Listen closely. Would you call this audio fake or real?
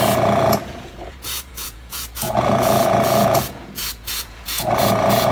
fake